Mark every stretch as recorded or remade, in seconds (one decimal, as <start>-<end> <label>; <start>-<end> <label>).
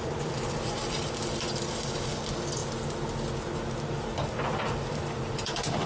0.0-2.6 remade; 2.6-3.9 recorded; 3.9-5.9 remade